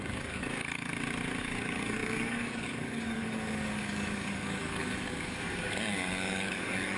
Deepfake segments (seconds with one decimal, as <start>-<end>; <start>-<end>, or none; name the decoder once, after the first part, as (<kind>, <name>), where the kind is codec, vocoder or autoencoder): 0.0-0.9 (codec, DAC); 1.4-7.0